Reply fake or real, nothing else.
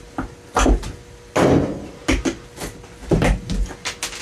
real